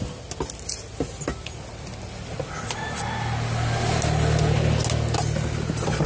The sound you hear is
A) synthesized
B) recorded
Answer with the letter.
B